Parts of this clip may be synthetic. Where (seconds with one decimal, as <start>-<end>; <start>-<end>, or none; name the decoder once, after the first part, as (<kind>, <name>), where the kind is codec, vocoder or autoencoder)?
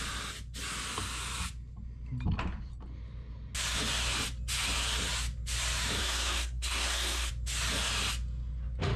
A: 6.0-7.3 (codec, SNAC)